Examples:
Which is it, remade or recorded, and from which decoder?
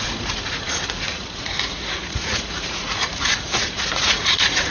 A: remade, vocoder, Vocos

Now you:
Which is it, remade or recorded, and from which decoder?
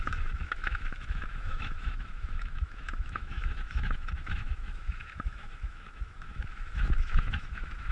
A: remade, autoencoder, DAC-VAE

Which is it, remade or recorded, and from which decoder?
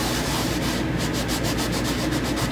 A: recorded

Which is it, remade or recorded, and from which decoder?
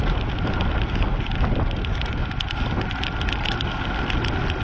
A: recorded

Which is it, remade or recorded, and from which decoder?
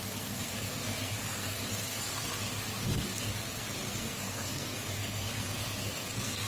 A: remade, codec, SNAC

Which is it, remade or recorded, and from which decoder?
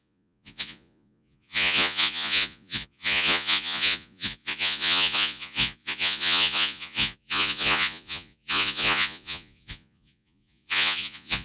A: remade, vocoder, Vocos